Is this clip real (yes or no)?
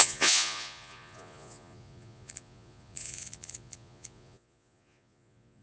no